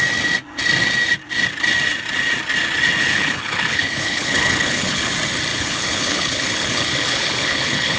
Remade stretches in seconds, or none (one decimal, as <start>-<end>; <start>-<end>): 3.0-5.1; 5.5-8.0